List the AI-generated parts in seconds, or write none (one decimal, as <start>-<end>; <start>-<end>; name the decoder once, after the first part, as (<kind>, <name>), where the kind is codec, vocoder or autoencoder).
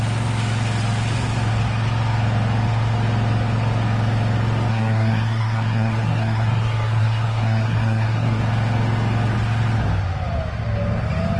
4.7-8.4 (codec, SNAC)